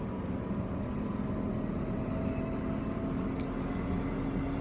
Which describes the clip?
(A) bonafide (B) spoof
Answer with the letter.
A